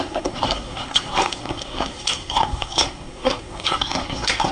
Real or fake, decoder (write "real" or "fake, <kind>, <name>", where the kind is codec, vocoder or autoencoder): fake, codec, SNAC